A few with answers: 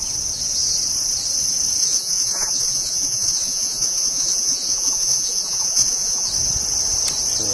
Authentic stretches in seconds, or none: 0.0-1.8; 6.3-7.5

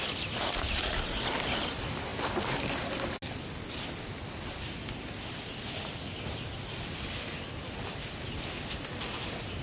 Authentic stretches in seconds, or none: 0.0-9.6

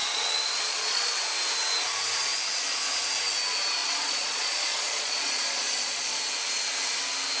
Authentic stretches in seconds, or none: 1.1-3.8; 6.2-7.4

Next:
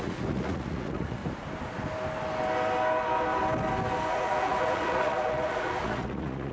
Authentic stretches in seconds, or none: 1.2-4.1

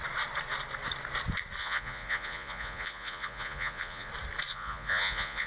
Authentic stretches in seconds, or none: 0.0-1.6; 4.1-4.5